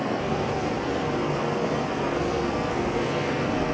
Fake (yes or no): yes